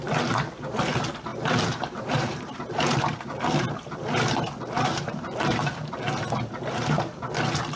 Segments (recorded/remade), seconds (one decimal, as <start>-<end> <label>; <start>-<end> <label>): 0.0-1.3 recorded; 1.3-6.0 remade; 6.0-7.8 recorded